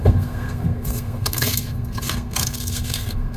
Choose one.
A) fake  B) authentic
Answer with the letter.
A